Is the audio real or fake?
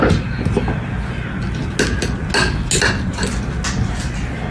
real